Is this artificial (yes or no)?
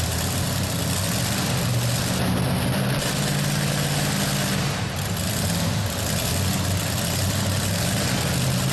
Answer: no